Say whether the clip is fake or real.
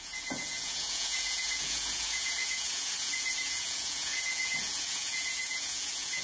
fake